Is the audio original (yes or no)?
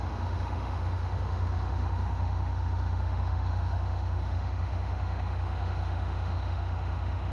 no